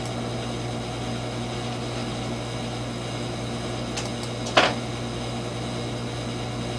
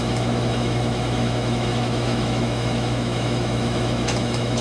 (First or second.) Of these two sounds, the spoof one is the second